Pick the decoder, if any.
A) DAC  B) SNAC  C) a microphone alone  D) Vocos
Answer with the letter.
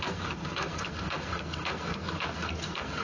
B